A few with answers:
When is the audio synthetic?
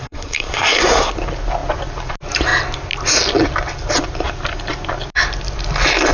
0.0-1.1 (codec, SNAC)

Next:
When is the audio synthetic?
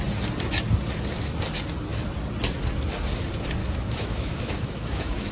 3.6-5.3 (autoencoder, DAC-VAE)